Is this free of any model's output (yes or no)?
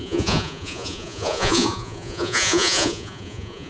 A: no